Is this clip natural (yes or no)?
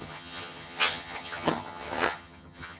no